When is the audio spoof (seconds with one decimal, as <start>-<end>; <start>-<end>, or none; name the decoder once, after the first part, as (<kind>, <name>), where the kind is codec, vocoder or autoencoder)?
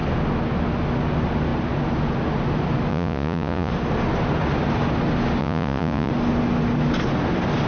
2.9-3.7 (vocoder, Vocos); 5.4-6.1